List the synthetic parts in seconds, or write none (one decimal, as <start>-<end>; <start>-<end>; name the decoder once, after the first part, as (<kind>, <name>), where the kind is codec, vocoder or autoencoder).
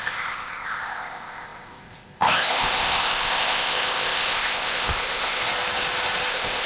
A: 0.0-5.4 (codec, ZipCodec); 6.3-6.7